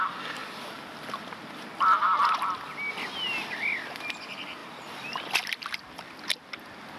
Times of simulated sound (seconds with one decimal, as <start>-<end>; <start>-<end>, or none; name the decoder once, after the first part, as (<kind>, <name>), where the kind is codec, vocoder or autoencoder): none